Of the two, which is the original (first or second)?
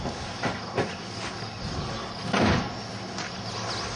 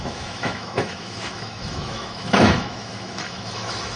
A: first